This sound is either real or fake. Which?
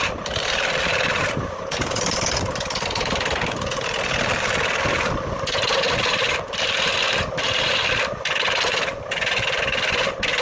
real